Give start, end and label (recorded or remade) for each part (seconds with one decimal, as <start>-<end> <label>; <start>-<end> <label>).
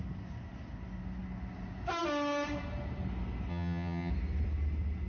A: 0.0-3.5 recorded; 3.5-4.1 remade; 4.1-5.1 recorded